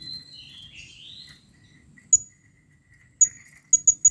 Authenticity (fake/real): real